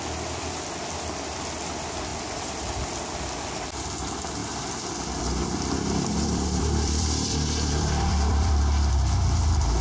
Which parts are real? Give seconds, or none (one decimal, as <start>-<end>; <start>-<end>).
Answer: 0.0-4.4; 8.6-9.8